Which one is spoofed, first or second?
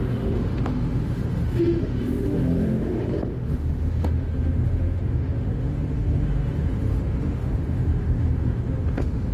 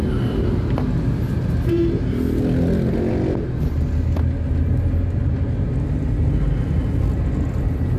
first